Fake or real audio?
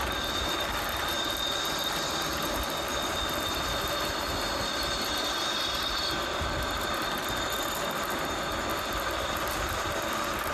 real